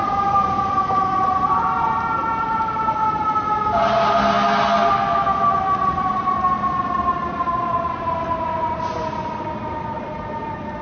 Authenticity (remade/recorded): recorded